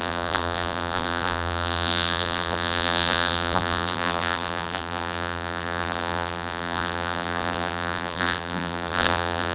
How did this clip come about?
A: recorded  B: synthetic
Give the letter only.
B